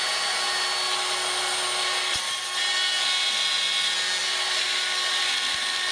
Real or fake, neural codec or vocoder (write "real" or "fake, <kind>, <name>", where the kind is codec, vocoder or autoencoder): real